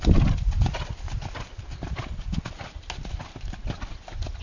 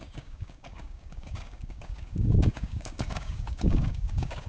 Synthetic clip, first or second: second